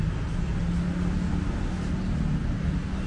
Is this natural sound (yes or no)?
yes